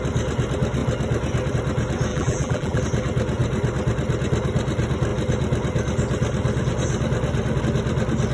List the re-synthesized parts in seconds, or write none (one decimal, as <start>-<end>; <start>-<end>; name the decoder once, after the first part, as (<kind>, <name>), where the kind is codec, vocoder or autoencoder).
2.1-2.8 (vocoder, BigVGAN v2)